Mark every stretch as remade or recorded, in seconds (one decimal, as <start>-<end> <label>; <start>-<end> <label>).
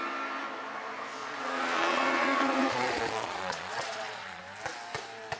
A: 0.0-1.2 recorded; 1.2-4.4 remade; 4.4-5.4 recorded